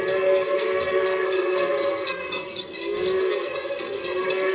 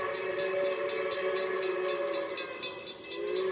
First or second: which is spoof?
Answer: first